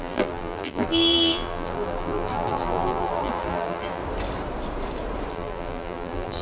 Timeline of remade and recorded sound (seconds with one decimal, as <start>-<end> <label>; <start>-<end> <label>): 0.0-4.0 remade; 4.0-5.3 recorded; 5.3-6.4 remade